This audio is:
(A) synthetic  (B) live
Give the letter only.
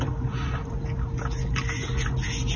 B